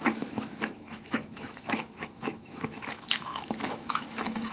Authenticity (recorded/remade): remade